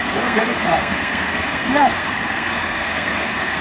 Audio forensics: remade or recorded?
remade